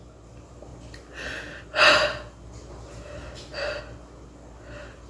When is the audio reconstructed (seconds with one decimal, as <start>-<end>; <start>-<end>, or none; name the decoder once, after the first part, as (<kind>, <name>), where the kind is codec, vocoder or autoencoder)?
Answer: none